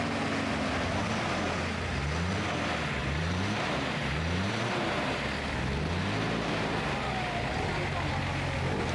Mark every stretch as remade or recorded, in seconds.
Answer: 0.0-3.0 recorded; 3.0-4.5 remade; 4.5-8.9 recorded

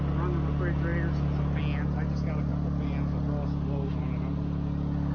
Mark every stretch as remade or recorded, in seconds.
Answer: 0.0-5.1 recorded